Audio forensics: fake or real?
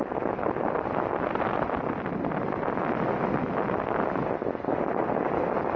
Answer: real